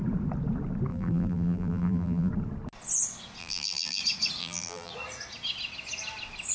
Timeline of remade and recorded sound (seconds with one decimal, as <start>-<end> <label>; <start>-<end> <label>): 0.0-0.9 recorded; 0.9-2.3 remade; 2.3-3.4 recorded; 3.4-4.0 remade; 4.0-4.4 recorded; 4.4-4.9 remade; 4.9-6.5 recorded